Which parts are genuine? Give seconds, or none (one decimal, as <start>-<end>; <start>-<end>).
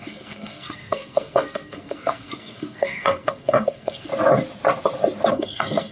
4.1-5.3